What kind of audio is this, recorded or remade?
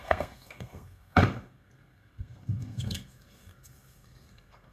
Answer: remade